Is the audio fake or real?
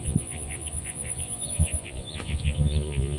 fake